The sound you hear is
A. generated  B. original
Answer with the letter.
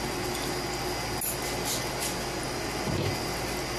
B